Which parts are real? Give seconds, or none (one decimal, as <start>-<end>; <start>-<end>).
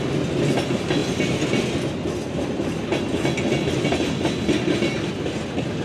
0.0-5.8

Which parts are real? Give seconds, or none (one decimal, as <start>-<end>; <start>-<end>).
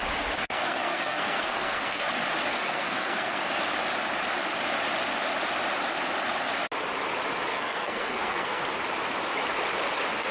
0.0-0.4; 2.1-2.5; 3.5-7.5; 8.6-10.3